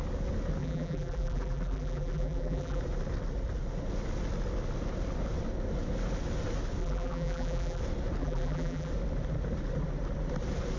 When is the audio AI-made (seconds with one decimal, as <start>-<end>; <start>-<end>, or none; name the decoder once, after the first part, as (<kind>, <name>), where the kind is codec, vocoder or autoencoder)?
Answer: 0.6-2.8 (vocoder, BigVGAN v2); 6.8-7.8; 8.2-8.9